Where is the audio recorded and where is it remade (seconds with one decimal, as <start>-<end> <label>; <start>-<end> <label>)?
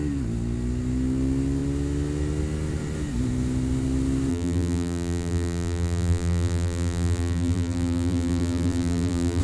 0.0-4.3 recorded; 4.3-9.4 remade